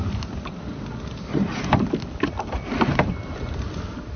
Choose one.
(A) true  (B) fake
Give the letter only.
A